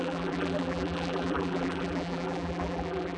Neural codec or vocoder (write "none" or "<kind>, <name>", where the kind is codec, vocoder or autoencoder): vocoder, BigVGAN v2